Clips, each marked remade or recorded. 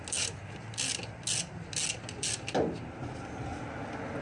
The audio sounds recorded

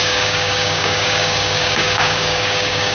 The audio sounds remade